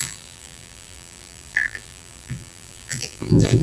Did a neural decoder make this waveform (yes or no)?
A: yes